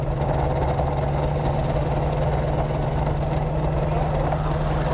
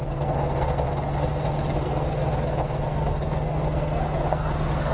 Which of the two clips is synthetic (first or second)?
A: second